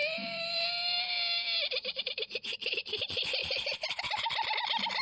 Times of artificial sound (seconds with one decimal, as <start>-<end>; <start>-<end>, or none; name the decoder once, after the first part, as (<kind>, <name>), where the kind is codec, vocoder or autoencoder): 0.0-3.0 (vocoder, BigVGAN v2); 3.4-4.0